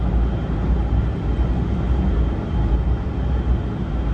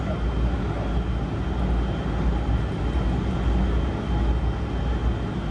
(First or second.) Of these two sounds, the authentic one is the second